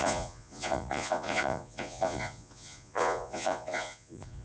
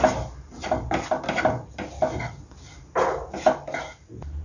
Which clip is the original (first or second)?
second